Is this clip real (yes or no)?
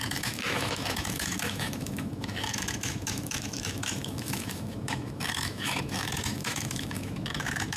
no